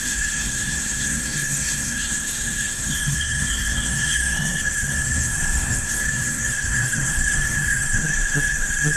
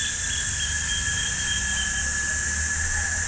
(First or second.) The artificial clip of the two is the first